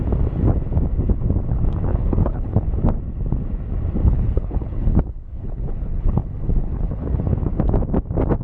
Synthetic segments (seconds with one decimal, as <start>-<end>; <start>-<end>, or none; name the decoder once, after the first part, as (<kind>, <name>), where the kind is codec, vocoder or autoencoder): 1.9-2.7 (codec, HILCodec); 4.0-7.2